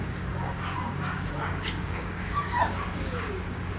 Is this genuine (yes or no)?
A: no